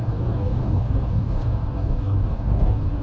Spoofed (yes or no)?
yes